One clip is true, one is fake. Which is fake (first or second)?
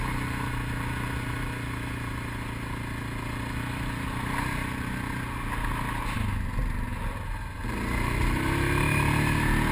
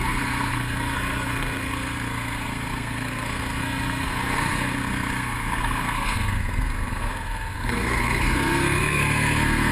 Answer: second